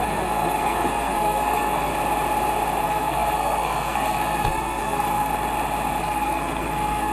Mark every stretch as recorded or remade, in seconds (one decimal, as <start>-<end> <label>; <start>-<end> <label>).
0.0-1.9 remade; 1.9-2.8 recorded; 2.8-5.3 remade; 5.3-6.0 recorded; 6.0-7.1 remade